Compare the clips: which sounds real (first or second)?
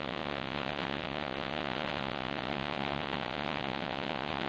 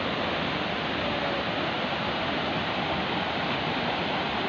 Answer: second